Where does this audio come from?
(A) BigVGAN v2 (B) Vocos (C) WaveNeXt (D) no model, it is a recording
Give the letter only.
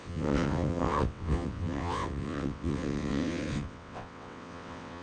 C